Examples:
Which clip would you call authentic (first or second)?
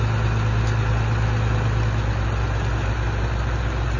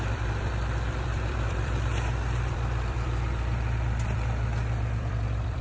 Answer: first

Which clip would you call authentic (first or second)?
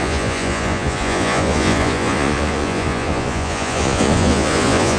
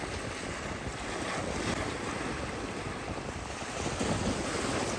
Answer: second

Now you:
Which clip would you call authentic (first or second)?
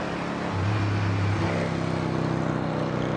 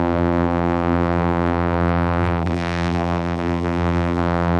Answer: first